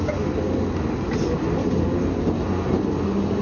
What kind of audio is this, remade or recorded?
recorded